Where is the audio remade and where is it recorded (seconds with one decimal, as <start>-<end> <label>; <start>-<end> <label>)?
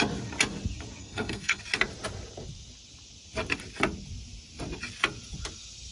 0.0-1.0 recorded; 1.0-1.6 remade; 1.6-5.9 recorded